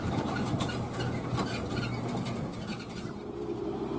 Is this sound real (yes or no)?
yes